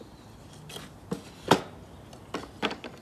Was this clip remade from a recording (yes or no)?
no